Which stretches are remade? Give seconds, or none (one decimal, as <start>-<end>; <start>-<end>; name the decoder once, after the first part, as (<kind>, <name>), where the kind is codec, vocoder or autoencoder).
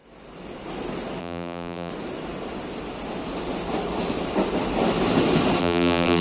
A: 1.2-1.9 (vocoder, BigVGAN v2); 5.6-6.2